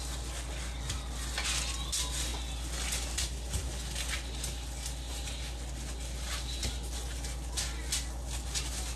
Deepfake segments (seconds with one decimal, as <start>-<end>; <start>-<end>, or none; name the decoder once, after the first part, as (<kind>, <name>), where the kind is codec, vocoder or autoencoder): none